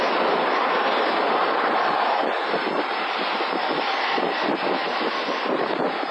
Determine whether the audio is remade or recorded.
recorded